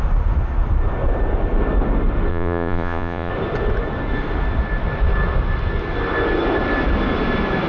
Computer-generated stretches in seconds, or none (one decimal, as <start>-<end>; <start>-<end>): 2.3-3.3